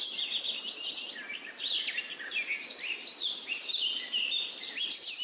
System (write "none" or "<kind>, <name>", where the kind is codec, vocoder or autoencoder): none